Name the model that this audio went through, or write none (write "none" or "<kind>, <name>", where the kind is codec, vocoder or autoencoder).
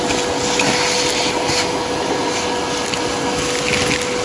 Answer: none